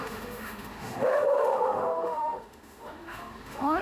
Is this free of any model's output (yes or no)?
no